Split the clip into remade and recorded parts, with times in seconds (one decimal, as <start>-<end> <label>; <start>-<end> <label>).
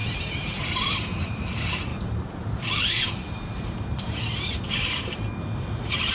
0.0-6.1 remade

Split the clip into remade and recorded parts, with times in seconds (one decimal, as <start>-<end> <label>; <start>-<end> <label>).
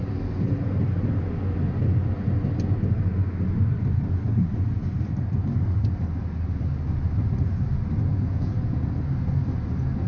0.0-8.1 recorded; 8.1-9.0 remade; 9.0-10.1 recorded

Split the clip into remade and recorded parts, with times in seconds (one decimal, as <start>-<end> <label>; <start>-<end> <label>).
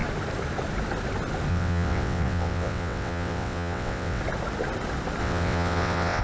0.0-1.5 recorded; 1.5-4.2 remade; 4.2-5.2 recorded; 5.2-6.2 remade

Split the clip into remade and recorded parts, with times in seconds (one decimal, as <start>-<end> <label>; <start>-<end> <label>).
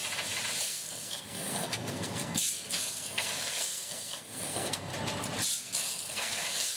0.0-0.6 recorded; 0.6-4.9 remade; 4.9-5.6 recorded; 5.6-6.8 remade